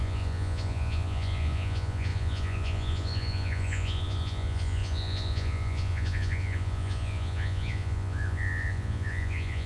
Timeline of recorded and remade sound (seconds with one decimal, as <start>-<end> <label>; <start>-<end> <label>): 0.0-9.7 remade